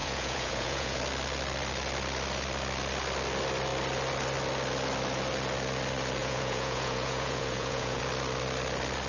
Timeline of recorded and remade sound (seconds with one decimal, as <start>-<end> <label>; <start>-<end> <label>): 0.0-1.0 remade; 1.0-6.2 recorded; 6.2-8.0 remade; 8.0-9.1 recorded